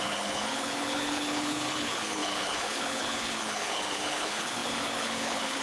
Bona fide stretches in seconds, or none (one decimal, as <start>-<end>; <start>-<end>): none